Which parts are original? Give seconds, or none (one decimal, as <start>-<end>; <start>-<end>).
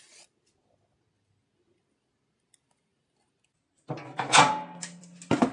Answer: 0.0-5.5